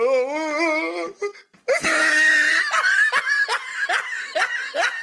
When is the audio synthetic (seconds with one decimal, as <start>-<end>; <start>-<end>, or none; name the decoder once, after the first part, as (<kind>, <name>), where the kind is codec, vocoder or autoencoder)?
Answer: none